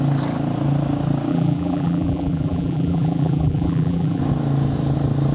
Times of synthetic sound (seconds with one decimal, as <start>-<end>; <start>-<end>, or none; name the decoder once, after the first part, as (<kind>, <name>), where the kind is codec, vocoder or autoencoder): 1.3-4.2 (vocoder, BigVGAN v2)